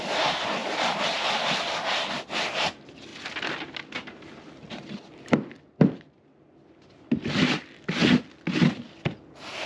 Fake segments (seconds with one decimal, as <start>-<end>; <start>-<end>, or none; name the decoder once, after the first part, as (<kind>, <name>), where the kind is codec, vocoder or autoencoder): none